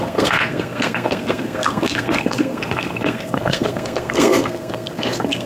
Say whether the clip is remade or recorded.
remade